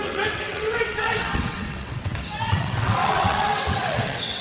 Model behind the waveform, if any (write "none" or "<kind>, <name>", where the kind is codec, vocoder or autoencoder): vocoder, WaveNeXt